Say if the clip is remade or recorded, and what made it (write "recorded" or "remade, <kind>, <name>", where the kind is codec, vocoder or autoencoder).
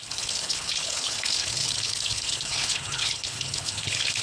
remade, codec, HILCodec